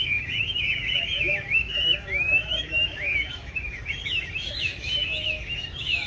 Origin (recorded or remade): remade